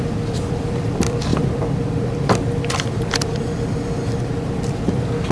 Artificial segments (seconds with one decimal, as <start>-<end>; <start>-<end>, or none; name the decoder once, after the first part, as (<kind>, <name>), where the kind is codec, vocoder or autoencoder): 0.0-5.3 (vocoder, BigVGAN v2)